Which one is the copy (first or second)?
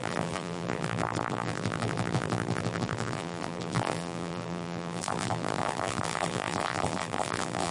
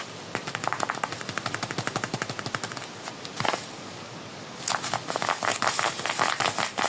first